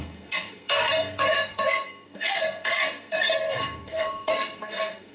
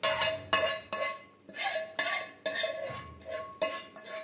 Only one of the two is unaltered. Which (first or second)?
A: second